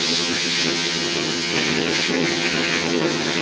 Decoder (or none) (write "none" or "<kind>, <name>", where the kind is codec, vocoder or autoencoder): vocoder, HiFi-GAN